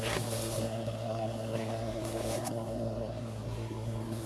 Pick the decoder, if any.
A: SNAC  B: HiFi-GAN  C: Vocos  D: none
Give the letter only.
A